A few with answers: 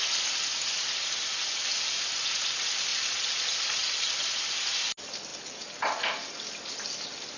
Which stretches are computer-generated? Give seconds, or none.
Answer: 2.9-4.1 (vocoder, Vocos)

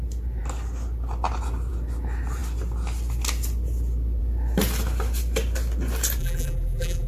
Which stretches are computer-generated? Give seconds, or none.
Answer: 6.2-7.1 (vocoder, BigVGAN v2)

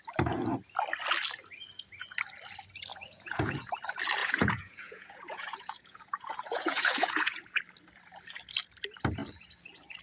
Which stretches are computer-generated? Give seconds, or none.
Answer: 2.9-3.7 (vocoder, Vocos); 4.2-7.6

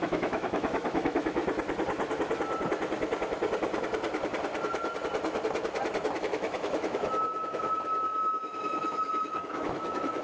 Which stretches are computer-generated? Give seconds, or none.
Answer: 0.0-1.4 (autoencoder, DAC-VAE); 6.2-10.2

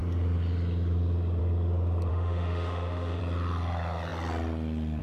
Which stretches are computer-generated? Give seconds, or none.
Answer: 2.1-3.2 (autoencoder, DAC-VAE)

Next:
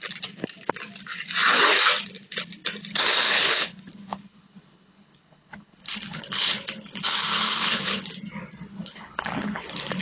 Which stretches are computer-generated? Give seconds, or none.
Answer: 2.9-8.1 (codec, HILCodec); 8.7-10.0

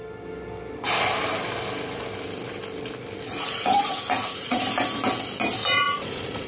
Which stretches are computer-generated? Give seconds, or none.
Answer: 3.3-4.6 (vocoder, Vocos); 5.6-6.5

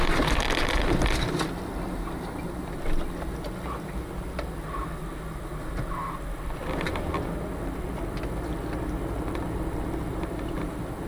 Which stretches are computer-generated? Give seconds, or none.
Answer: none